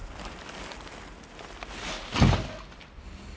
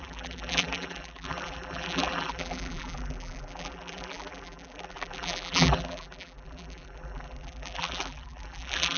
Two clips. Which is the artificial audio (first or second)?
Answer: second